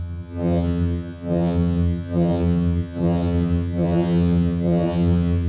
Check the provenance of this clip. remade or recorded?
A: remade